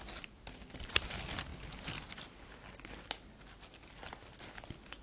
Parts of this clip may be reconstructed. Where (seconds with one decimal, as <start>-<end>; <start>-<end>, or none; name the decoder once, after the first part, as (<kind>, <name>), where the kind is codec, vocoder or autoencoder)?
none